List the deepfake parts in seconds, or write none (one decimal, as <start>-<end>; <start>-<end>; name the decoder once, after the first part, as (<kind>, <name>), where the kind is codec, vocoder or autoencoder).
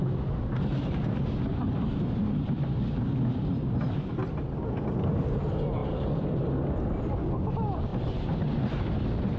none